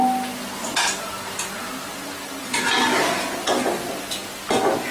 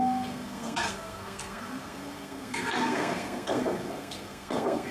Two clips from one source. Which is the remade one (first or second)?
second